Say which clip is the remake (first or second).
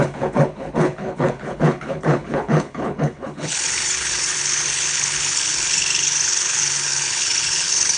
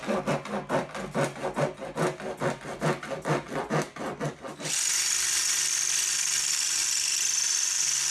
first